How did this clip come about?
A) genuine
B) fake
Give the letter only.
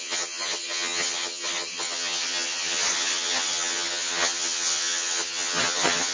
B